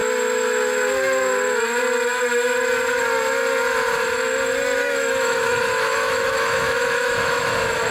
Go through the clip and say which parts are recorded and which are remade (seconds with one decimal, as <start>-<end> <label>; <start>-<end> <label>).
0.0-4.8 recorded; 4.8-7.5 remade; 7.5-7.9 recorded